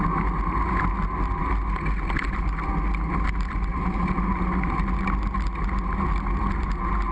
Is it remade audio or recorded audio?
recorded